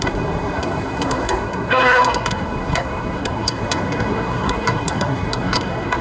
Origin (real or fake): fake